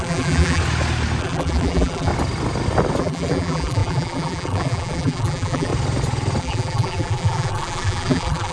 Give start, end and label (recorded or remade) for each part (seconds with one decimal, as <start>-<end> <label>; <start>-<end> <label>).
0.0-0.6 remade; 0.6-1.2 recorded; 1.2-2.1 remade; 2.1-3.0 recorded; 3.0-5.7 remade; 5.7-6.4 recorded; 6.4-8.5 remade